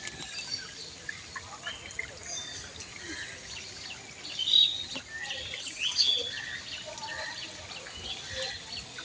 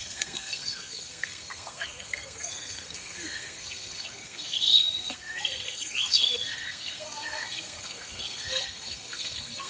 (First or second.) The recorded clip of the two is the first